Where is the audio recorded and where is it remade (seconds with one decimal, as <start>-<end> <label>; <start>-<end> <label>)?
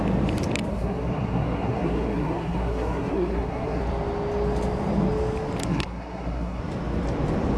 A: 0.0-0.7 recorded; 0.7-3.8 remade; 3.8-5.6 recorded; 5.6-6.6 remade; 6.6-7.6 recorded